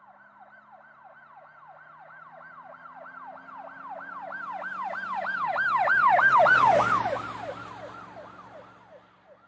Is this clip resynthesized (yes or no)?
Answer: no